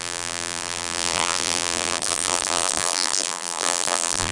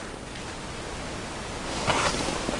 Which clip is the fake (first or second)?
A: first